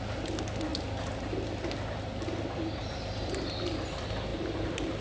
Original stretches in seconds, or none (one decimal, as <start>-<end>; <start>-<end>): 0.0-5.0